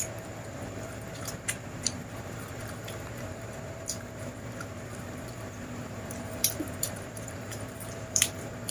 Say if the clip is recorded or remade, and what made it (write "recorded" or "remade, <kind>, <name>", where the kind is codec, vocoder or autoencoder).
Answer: remade, vocoder, BigVGAN v2